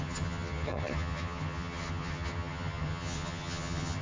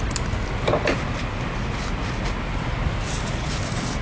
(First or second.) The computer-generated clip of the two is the first